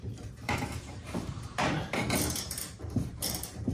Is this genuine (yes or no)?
no